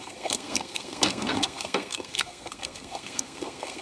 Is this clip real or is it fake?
fake